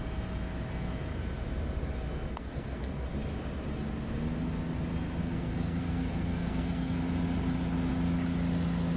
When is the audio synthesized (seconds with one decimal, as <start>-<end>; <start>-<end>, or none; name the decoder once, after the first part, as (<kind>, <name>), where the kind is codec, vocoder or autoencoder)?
2.3-2.9 (codec, SNAC); 5.2-7.0